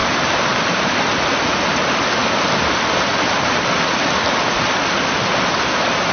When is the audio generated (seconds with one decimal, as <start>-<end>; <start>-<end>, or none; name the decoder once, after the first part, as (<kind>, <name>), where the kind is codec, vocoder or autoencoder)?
0.0-1.0 (vocoder, BigVGAN v2)